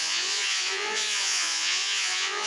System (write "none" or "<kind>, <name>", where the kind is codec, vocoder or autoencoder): vocoder, Vocos